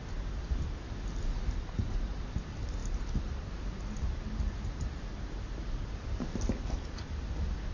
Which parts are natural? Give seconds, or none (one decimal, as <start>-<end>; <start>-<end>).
0.0-7.7